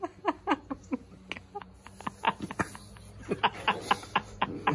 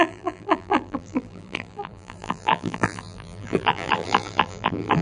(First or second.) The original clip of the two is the first